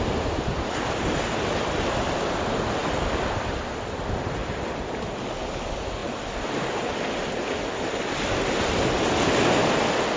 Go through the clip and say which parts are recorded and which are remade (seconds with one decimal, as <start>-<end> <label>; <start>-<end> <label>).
0.0-2.8 recorded; 2.8-3.5 remade; 3.5-4.4 recorded; 4.4-5.0 remade; 5.0-10.2 recorded